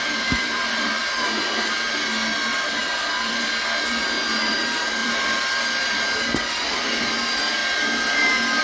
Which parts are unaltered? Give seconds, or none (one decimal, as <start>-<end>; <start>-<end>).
1.0-2.8; 4.0-4.5; 7.6-8.6